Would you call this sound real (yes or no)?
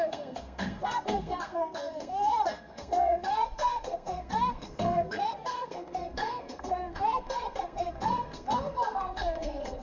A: no